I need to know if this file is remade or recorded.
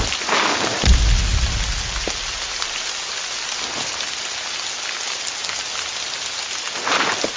recorded